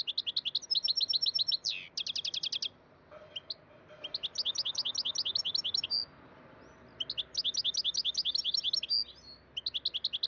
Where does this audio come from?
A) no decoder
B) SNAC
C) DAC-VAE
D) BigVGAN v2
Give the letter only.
A